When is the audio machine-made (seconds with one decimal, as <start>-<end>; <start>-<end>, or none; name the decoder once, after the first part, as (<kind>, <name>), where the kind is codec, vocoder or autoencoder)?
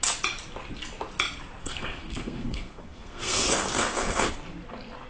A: 1.6-4.3 (codec, SNAC)